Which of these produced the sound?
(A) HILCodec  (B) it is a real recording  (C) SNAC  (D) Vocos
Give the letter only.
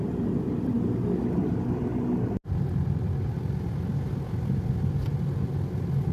B